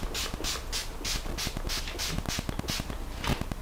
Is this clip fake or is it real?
real